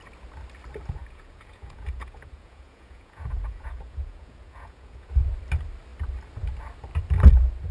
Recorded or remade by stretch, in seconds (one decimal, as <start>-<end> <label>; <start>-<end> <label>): 0.0-1.0 recorded; 1.0-5.1 remade; 5.1-7.7 recorded